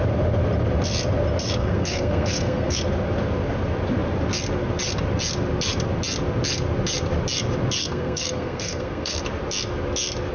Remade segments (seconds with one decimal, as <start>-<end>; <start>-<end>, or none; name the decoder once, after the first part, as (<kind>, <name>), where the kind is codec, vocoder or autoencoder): 1.6-2.8 (codec, SNAC); 7.8-9.2